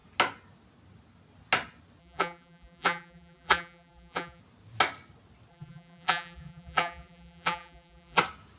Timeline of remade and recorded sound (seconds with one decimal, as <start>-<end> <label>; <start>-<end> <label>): 0.0-2.0 recorded; 2.0-4.4 remade; 4.4-5.5 recorded; 5.5-8.2 remade; 8.2-8.6 recorded